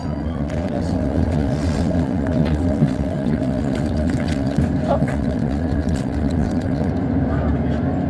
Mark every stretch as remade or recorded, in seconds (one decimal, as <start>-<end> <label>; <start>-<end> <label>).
0.0-4.6 remade; 4.6-5.0 recorded; 5.0-6.9 remade; 6.9-8.1 recorded